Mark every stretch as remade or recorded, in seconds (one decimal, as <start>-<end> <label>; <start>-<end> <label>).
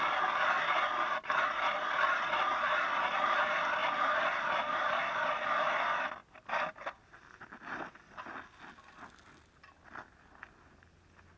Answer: 0.0-3.8 recorded; 3.8-5.0 remade; 5.0-11.4 recorded